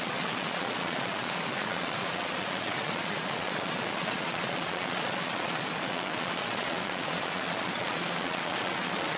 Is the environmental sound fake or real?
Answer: fake